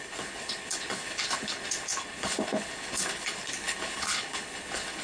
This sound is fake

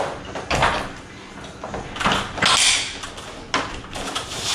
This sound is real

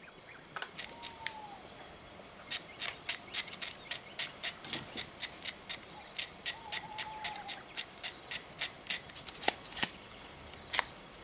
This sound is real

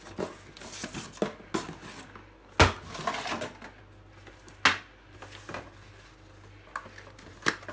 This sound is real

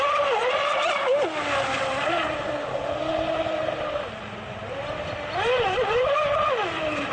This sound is real